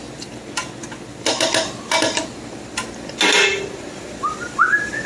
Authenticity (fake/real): real